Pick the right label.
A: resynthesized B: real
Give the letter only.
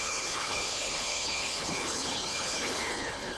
A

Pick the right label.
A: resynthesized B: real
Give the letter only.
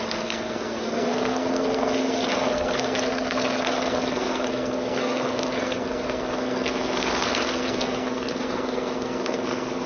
A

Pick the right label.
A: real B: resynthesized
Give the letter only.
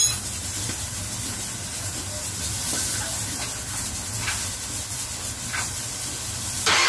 A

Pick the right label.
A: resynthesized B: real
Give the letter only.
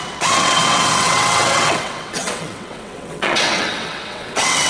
A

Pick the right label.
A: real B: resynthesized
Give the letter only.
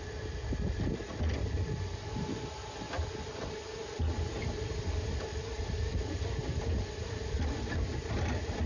B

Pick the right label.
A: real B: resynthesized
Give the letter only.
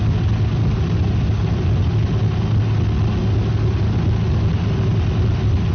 A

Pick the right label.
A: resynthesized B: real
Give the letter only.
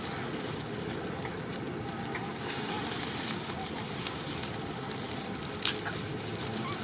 B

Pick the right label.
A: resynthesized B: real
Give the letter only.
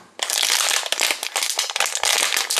B